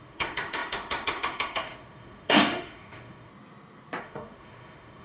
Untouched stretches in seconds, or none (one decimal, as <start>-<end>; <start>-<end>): 3.3-4.0